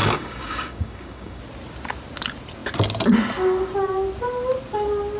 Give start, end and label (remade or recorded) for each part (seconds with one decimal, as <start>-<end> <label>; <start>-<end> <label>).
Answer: 0.0-1.4 remade; 1.4-5.2 recorded